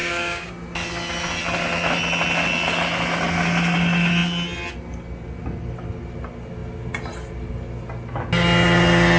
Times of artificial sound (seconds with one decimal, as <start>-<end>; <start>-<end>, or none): 0.0-0.5